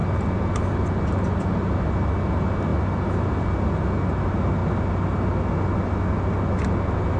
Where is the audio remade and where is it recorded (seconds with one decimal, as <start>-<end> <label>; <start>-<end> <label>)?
0.0-7.2 recorded